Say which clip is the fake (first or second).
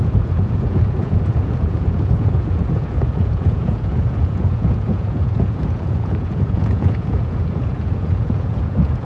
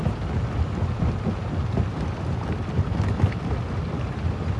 first